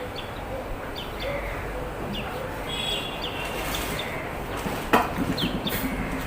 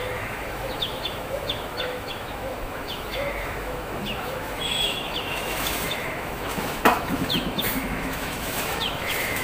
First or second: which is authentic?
first